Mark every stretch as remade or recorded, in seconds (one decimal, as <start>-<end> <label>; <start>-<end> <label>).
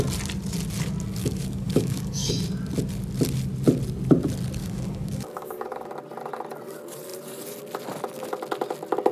0.0-1.2 recorded; 1.2-2.3 remade; 2.3-4.6 recorded; 4.6-5.9 remade; 5.9-9.1 recorded